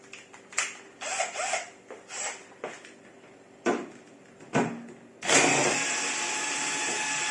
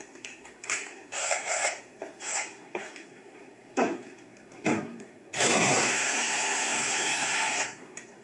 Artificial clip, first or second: second